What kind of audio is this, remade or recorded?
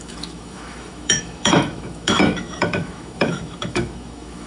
remade